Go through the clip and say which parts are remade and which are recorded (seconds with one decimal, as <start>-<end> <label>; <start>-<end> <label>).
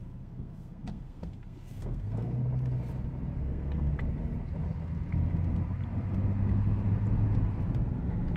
0.0-2.4 remade; 2.4-3.4 recorded; 3.4-3.9 remade; 3.9-8.4 recorded